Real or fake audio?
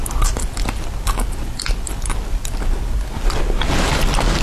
real